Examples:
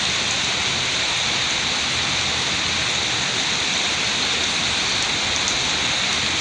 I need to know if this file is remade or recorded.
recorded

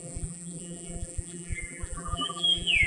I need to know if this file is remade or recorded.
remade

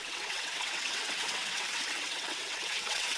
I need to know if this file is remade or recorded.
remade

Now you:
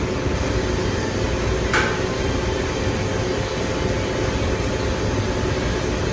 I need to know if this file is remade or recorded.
recorded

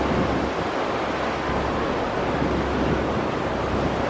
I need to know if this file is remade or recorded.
recorded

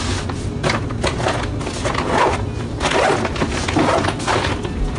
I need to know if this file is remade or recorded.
recorded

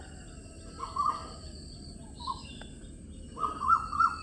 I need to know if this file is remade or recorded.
recorded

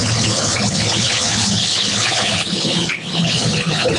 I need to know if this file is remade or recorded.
remade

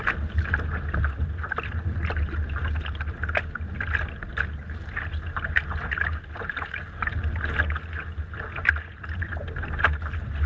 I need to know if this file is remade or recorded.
recorded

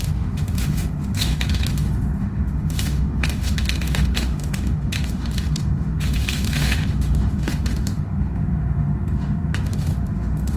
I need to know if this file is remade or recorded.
remade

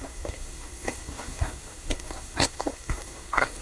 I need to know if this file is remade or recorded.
remade